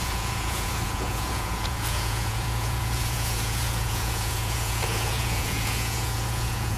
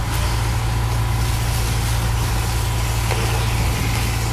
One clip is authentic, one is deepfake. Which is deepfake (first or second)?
first